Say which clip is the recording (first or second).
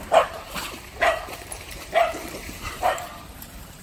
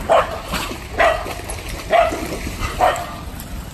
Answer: second